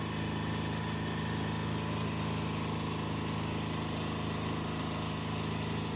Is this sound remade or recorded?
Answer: recorded